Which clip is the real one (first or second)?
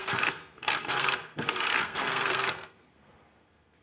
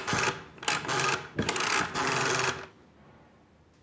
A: second